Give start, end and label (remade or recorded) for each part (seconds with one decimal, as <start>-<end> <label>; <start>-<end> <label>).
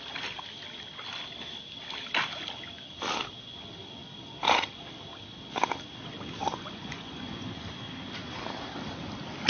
0.0-6.4 recorded; 6.4-7.5 remade; 7.5-9.5 recorded